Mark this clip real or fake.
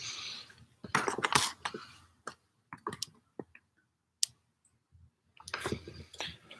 real